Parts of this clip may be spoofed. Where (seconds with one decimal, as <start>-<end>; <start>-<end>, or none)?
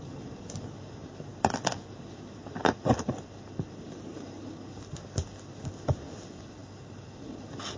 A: none